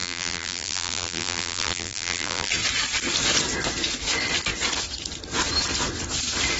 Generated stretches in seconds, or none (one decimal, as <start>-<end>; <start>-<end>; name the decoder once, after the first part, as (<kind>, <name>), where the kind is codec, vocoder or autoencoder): 0.0-2.5 (vocoder, BigVGAN v2)